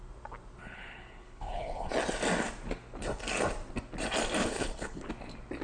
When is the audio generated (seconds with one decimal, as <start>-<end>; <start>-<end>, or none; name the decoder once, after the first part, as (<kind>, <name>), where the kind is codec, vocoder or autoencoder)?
0.6-1.9 (codec, HILCodec); 4.4-5.0